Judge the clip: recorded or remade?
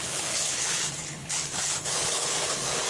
remade